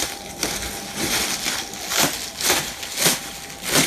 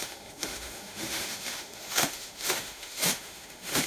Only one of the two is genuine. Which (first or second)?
first